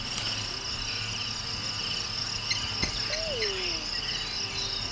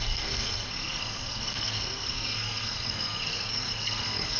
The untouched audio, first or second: first